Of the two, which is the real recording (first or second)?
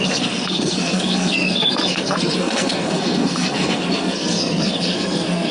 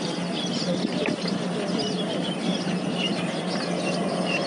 second